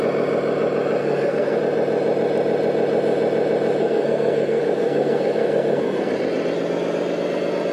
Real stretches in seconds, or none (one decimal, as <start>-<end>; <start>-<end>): 0.0-1.0; 1.6-3.8; 6.1-7.7